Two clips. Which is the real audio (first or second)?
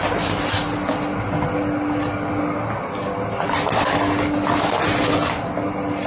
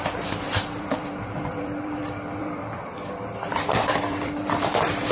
first